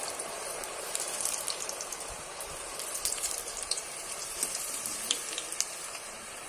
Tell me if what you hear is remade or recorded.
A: remade